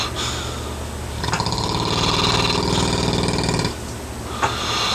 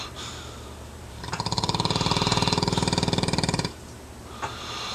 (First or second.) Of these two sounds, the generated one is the second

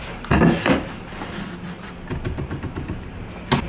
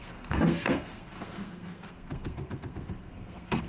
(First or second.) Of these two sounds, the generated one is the second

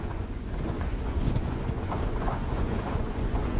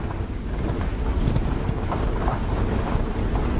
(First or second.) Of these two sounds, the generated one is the first